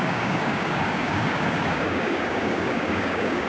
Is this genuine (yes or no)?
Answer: no